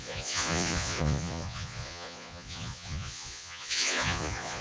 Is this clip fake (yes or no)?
yes